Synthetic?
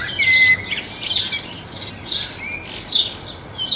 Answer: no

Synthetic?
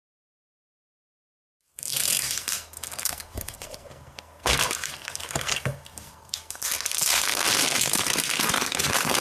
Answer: yes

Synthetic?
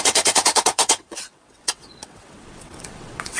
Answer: yes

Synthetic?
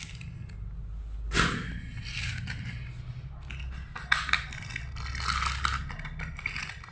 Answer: no